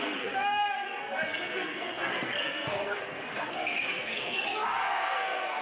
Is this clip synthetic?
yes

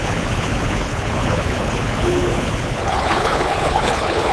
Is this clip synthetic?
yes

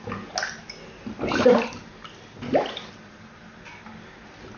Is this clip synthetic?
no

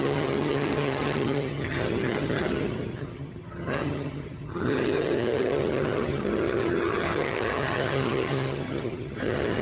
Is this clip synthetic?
yes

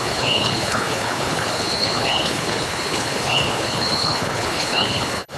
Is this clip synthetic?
yes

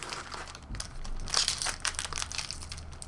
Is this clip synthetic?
no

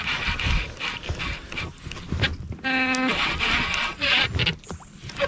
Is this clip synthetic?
no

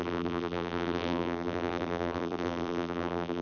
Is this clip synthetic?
yes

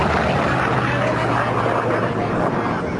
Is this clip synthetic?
no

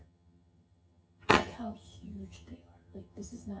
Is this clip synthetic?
yes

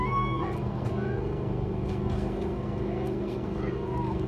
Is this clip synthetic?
yes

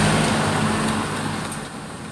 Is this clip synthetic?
no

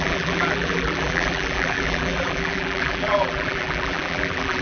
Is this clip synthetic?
yes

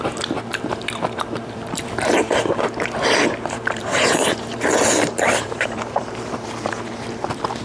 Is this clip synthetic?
yes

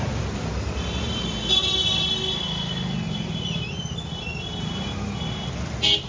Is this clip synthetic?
no